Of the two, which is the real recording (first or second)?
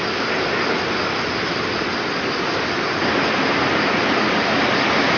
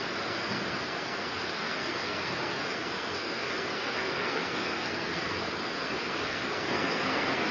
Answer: first